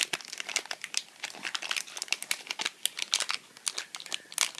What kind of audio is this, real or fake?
real